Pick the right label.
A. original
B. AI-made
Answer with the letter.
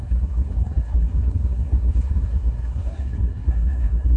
B